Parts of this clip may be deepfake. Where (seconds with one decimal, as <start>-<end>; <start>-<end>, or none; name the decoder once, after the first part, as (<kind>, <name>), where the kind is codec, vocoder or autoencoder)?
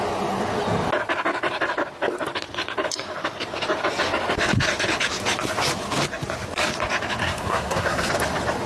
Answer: 7.2-8.1 (codec, SNAC)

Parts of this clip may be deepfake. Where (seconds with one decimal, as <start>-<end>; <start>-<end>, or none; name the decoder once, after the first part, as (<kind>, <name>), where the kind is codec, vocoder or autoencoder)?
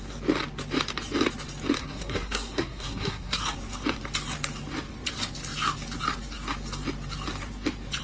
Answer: 1.8-3.4 (codec, SNAC)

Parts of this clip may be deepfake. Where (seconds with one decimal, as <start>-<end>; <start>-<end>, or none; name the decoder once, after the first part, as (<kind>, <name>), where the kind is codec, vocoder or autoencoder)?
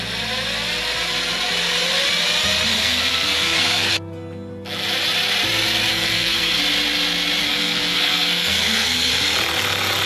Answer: 2.7-3.9 (codec, SNAC); 5.9-6.6; 7.4-9.1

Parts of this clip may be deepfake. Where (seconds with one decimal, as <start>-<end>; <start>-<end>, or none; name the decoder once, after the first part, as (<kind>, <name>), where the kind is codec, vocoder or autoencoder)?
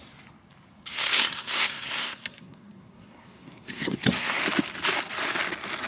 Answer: 0.9-4.4 (codec, SNAC)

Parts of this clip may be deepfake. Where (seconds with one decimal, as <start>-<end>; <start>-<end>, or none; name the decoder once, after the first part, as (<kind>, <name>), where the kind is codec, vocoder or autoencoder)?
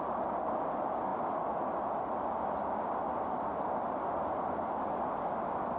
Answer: none